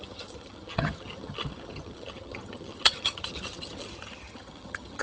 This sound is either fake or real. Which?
fake